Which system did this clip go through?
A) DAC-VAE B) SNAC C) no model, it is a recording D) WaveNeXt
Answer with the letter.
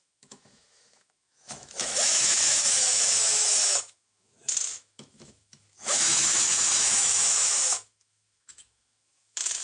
A